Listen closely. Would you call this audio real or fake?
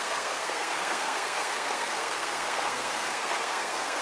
fake